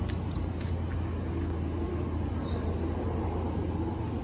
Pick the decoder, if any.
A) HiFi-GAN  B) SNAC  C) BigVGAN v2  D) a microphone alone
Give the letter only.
D